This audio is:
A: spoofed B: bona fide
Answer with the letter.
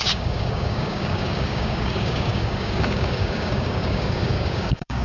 A